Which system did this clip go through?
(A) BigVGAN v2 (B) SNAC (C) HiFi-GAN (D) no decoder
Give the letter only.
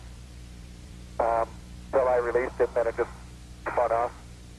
A